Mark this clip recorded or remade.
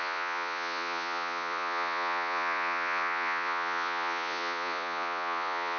remade